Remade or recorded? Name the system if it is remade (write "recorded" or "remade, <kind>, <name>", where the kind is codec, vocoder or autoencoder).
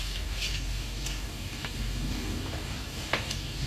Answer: remade, codec, DAC